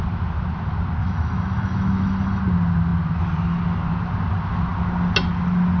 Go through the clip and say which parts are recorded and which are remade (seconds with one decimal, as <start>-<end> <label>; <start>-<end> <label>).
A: 0.0-1.0 recorded; 1.0-2.4 remade; 2.4-5.8 recorded